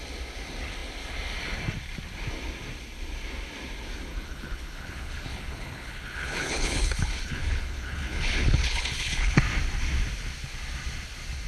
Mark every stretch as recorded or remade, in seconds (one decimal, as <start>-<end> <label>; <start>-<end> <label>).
0.0-4.1 recorded; 4.1-9.4 remade; 9.4-11.5 recorded